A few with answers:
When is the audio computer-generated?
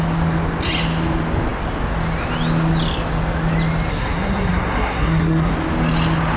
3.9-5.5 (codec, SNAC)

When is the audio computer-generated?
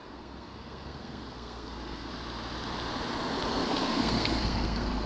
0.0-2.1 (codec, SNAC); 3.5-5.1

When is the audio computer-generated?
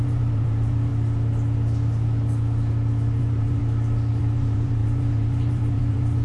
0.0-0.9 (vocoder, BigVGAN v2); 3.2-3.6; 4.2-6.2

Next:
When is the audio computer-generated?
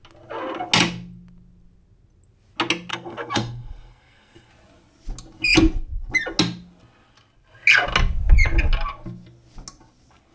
2.9-4.5 (codec, SNAC)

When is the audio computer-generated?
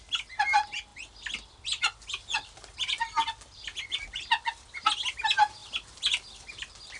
none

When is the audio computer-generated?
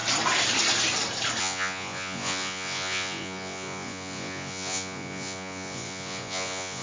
1.4-6.8 (vocoder, Vocos)